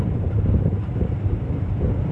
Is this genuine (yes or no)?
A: no